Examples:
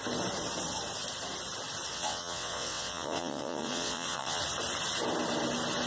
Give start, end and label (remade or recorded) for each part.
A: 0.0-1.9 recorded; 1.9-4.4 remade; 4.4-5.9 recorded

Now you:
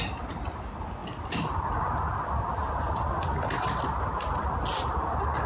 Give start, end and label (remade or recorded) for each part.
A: 0.0-5.5 recorded

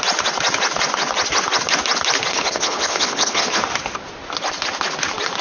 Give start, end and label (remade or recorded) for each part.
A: 0.0-2.3 recorded; 2.3-3.6 remade; 3.6-5.4 recorded

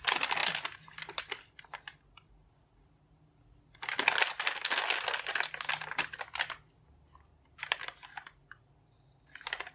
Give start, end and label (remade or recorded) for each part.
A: 0.0-9.7 recorded

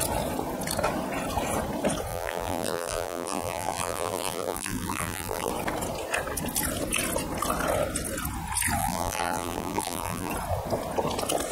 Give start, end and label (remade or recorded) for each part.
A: 0.0-2.1 recorded; 2.1-5.5 remade; 5.5-8.8 recorded; 8.8-10.3 remade; 10.3-11.5 recorded

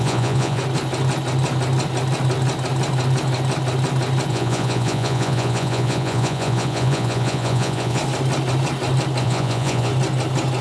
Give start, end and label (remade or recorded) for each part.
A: 0.0-0.6 remade; 0.6-4.3 recorded; 4.3-8.0 remade; 8.0-9.2 recorded; 9.2-9.9 remade; 9.9-10.6 recorded